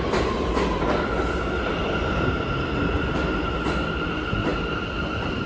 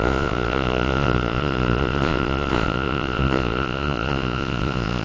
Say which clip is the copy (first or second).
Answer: second